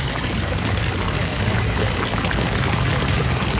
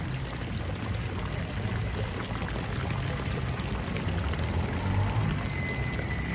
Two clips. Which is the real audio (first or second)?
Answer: second